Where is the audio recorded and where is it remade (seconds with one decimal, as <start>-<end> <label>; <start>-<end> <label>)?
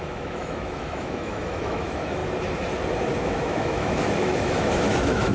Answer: 0.0-2.2 remade; 2.2-3.2 recorded; 3.2-5.3 remade